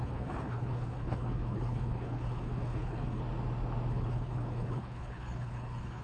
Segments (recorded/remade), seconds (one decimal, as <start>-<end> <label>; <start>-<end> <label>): 0.0-3.2 remade; 3.2-3.9 recorded; 3.9-6.0 remade